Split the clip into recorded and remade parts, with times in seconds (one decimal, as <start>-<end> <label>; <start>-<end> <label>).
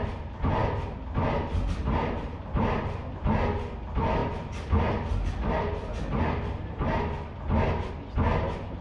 0.0-8.8 recorded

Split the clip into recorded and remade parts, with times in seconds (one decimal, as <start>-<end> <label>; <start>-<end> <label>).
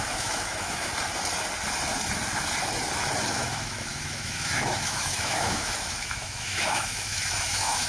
0.0-0.9 remade; 0.9-3.3 recorded; 3.3-7.9 remade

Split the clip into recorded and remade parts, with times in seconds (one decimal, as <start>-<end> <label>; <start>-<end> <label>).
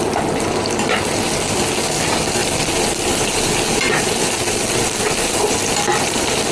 0.0-6.5 recorded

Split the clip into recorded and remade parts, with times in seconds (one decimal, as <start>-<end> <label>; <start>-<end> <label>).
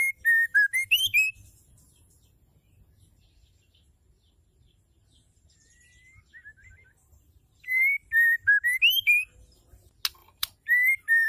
0.0-10.2 recorded; 10.2-11.3 remade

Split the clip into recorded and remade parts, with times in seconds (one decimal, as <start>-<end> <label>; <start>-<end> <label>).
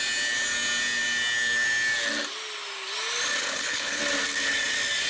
0.0-3.4 recorded; 3.4-4.0 remade; 4.0-5.1 recorded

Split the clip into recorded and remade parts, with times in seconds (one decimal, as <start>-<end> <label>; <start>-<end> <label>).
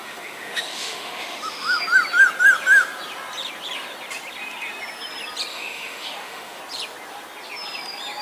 0.0-1.8 remade; 1.8-5.5 recorded; 5.5-6.6 remade; 6.6-8.2 recorded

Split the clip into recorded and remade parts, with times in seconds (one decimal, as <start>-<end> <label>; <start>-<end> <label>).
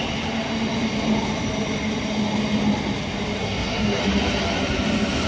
0.0-3.4 recorded; 3.4-4.0 remade; 4.0-5.3 recorded